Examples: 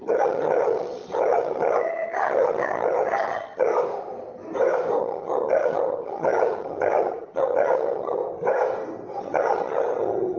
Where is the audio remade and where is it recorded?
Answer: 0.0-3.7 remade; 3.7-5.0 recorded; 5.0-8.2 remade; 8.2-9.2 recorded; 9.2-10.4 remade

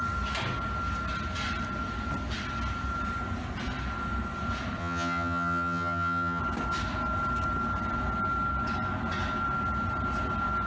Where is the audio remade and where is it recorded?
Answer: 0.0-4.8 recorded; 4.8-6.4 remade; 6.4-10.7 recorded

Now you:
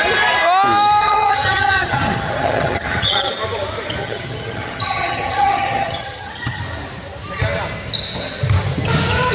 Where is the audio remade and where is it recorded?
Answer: 0.0-1.0 recorded; 1.0-3.3 remade; 3.3-4.0 recorded; 4.0-6.6 remade; 6.6-9.3 recorded